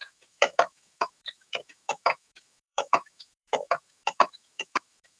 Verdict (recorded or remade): remade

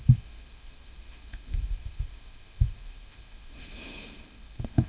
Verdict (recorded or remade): remade